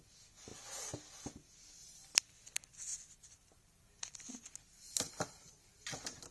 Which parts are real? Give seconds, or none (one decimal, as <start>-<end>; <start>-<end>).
0.0-2.9